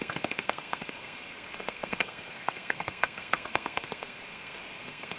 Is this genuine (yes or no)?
no